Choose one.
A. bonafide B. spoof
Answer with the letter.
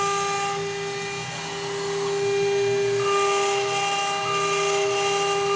A